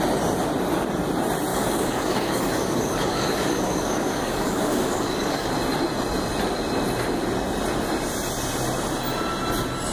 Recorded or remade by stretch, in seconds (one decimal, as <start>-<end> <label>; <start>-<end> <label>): 0.0-1.5 recorded; 1.5-5.5 remade; 5.5-9.9 recorded